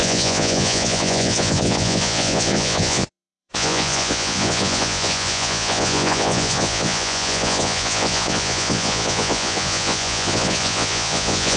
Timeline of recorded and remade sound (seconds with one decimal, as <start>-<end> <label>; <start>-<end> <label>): 0.0-11.6 remade